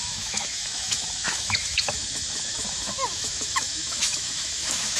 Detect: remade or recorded remade